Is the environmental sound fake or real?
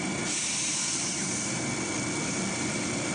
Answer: real